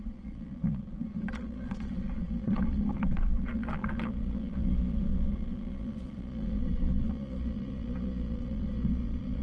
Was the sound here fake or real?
fake